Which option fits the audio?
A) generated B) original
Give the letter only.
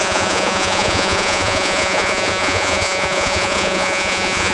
A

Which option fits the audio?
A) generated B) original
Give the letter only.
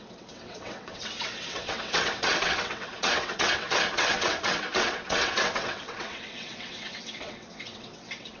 A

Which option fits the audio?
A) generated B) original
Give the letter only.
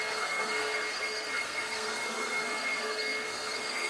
A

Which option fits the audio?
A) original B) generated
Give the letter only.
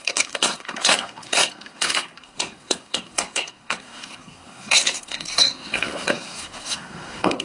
B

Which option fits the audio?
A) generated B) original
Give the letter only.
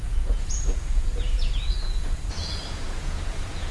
A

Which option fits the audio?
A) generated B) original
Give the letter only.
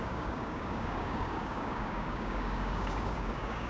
A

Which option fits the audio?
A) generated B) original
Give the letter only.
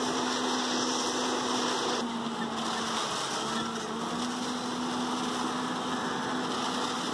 B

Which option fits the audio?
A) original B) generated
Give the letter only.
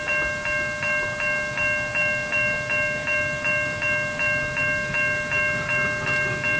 A